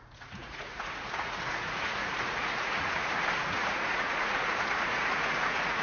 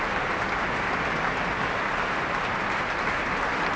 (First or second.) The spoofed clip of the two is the first